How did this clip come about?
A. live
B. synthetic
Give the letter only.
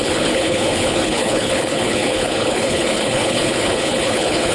B